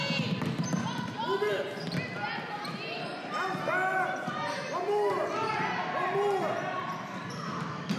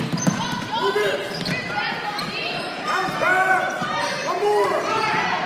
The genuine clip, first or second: first